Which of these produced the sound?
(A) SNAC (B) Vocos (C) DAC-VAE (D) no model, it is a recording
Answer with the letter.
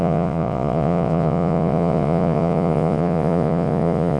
B